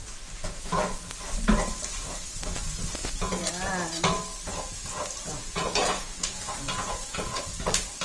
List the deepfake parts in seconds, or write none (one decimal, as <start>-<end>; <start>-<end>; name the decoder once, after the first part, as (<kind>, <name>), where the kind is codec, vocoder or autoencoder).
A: 0.4-1.0 (vocoder, Vocos); 3.0-3.5; 5.2-7.4